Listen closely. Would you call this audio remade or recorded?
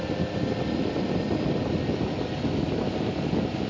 recorded